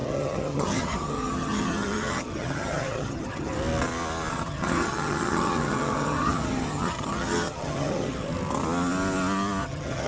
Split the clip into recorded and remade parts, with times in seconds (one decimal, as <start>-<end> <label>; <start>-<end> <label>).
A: 0.0-3.5 remade; 3.5-4.3 recorded; 4.3-8.3 remade; 8.3-9.6 recorded; 9.6-10.1 remade